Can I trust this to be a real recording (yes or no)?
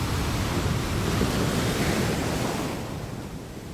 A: yes